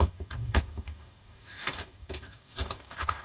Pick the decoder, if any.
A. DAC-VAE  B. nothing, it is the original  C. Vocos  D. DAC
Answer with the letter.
D